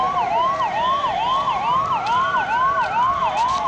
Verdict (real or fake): real